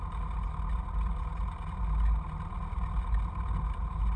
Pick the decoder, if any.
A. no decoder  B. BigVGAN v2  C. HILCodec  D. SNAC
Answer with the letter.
A